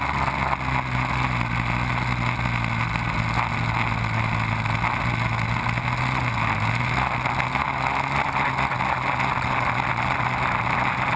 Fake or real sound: real